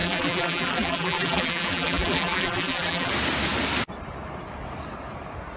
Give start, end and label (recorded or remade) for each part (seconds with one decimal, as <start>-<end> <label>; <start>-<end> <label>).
0.0-3.1 remade; 3.1-5.6 recorded